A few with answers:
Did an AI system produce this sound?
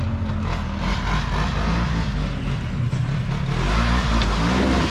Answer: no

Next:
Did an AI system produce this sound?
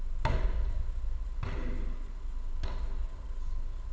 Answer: no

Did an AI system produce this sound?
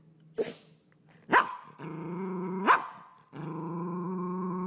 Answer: no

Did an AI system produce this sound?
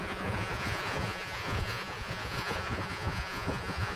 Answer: yes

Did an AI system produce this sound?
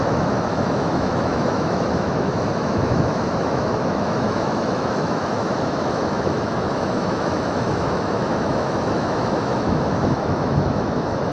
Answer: yes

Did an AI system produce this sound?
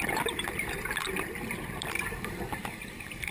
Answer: yes